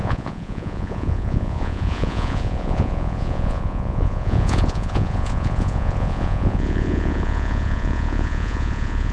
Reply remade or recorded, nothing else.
remade